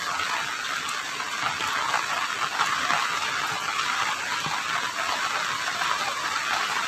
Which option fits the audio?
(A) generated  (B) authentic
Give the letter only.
B